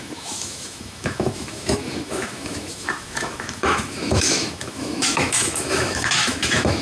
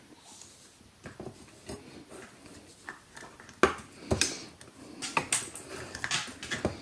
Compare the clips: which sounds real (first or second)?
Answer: second